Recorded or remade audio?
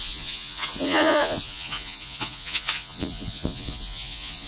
remade